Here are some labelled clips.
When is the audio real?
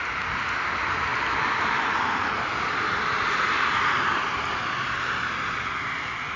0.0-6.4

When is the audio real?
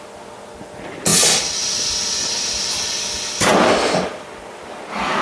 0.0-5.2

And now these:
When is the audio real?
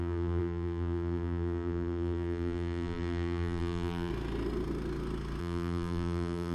4.1-5.4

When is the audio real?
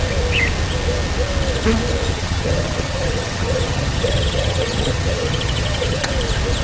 0.0-2.1; 6.1-6.6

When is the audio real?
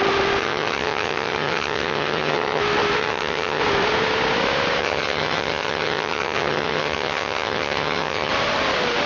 0.0-0.4; 2.6-3.0; 3.6-4.8; 8.3-9.1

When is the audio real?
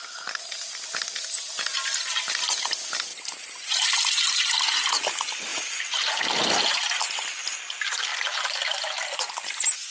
0.0-3.1; 5.0-5.5; 6.1-9.9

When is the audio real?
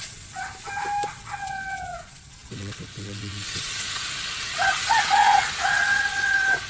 0.5-1.1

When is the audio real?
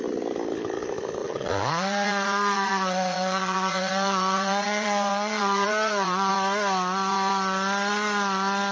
0.0-1.2; 6.3-8.7